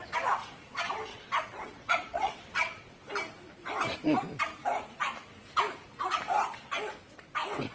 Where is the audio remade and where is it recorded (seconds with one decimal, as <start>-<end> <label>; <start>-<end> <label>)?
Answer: 0.0-1.1 recorded; 1.1-3.0 remade; 3.0-7.7 recorded